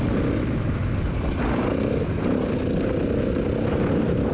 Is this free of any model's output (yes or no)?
yes